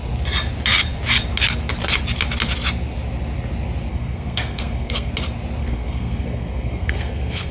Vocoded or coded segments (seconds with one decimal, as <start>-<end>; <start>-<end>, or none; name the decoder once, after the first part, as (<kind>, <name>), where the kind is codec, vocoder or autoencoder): 3.9-5.1 (codec, SNAC); 5.6-7.5